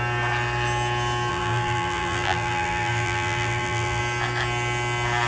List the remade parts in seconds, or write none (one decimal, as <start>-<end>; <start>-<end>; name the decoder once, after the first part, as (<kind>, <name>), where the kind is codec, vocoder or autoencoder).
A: 1.3-4.0 (vocoder, BigVGAN v2)